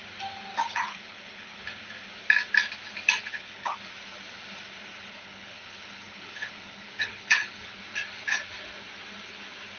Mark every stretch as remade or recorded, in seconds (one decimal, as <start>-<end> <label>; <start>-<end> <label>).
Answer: 0.0-0.7 recorded; 0.7-1.6 remade; 1.6-3.2 recorded; 3.2-3.8 remade; 3.8-5.1 recorded; 5.1-7.8 remade; 7.8-9.8 recorded